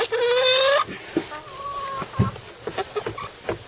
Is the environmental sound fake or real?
real